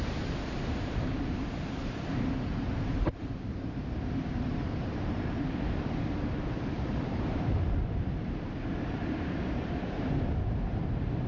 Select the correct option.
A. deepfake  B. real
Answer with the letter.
A